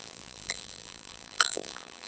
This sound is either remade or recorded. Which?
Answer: remade